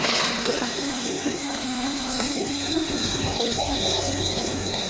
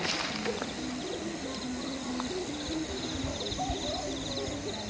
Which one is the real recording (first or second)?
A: second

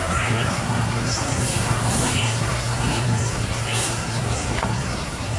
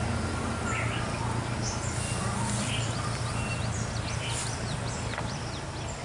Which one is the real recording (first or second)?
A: second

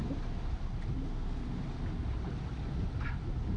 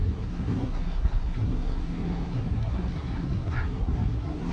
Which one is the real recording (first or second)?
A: first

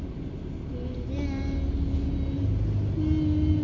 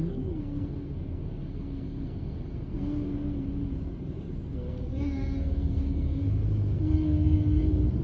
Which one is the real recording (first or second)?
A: first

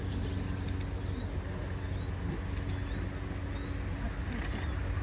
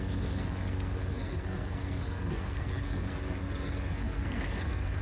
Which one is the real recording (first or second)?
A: first